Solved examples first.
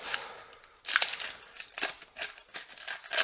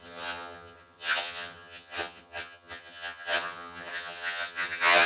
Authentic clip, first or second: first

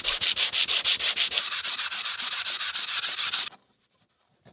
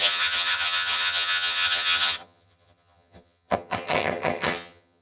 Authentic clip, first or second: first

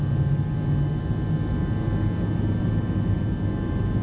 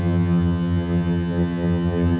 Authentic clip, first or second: first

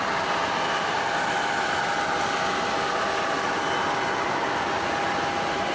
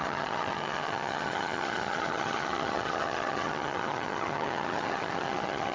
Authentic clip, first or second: first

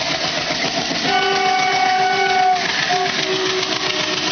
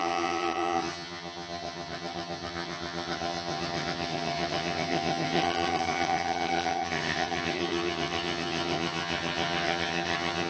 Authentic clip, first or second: first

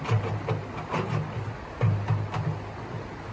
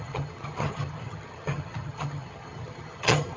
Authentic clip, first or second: first